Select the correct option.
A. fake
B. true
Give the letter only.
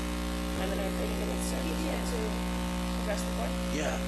B